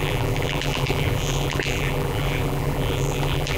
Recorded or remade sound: remade